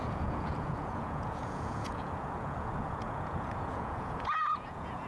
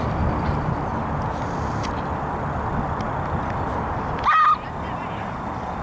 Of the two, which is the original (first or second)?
second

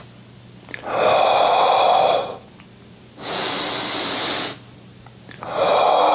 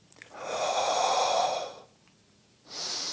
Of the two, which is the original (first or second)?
first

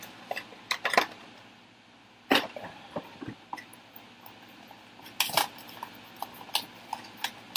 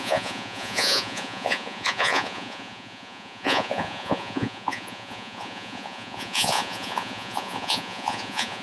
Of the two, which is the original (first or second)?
first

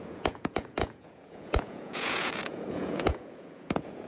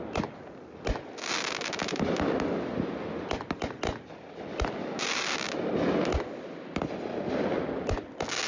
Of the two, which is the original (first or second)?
second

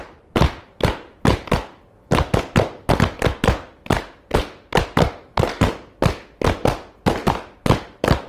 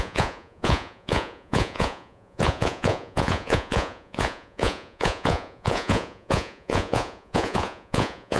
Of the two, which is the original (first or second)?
first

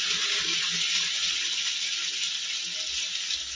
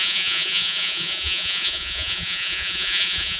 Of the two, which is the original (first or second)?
first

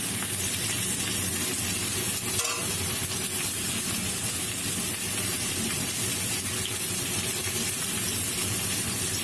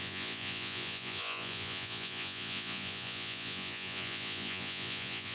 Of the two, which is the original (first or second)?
first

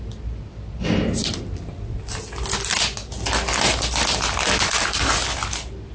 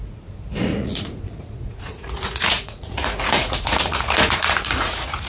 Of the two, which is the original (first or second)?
first